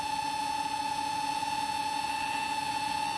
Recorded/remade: recorded